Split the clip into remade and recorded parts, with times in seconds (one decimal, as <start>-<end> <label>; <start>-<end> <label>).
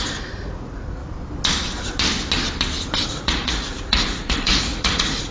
0.0-1.0 remade; 1.0-3.1 recorded; 3.1-5.3 remade